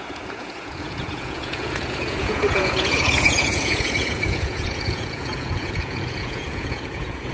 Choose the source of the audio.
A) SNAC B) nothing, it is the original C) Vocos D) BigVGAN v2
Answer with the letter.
C